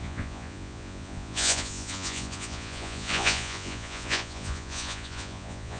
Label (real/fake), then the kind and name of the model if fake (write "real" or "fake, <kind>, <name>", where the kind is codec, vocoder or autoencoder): fake, vocoder, Vocos